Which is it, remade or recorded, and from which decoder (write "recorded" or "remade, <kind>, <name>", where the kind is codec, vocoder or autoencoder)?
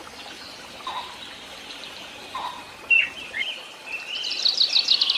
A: recorded